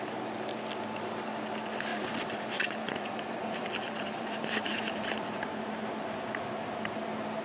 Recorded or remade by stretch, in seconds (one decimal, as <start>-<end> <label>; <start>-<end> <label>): 0.0-1.9 recorded; 1.9-5.4 remade; 5.4-7.4 recorded